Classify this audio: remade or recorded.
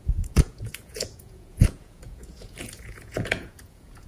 remade